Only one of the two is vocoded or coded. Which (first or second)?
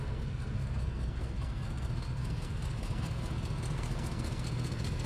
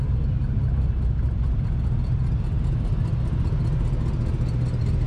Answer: first